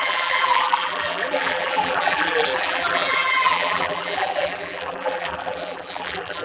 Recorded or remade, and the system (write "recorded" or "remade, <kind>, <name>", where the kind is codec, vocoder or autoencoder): remade, vocoder, BigVGAN v2